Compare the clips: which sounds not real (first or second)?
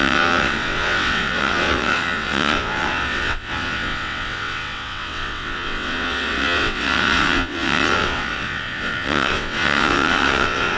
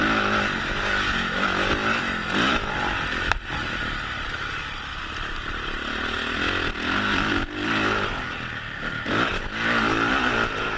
first